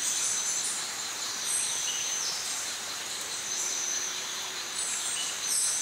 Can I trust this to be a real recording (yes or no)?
no